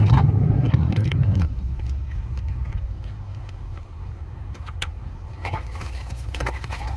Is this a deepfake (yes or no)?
yes